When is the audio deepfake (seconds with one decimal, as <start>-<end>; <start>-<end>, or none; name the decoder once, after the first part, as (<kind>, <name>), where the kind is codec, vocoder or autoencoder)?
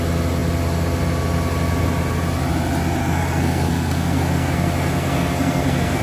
3.0-6.0 (codec, SNAC)